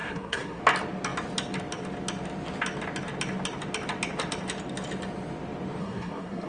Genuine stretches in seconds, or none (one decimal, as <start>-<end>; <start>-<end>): 0.6-5.8